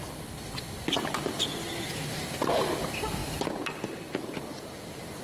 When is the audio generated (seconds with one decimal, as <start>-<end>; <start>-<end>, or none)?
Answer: none